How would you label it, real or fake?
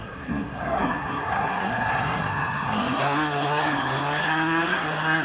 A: fake